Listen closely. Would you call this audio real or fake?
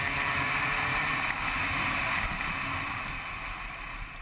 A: real